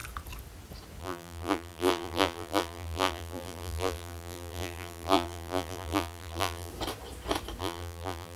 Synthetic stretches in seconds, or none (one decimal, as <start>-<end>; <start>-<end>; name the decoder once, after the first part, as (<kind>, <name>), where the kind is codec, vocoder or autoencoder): 1.0-6.7 (vocoder, BigVGAN v2); 7.6-8.4